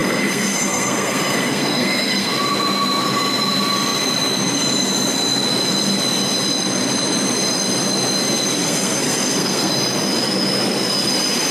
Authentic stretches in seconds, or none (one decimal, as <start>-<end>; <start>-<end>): 2.3-8.6; 9.7-11.5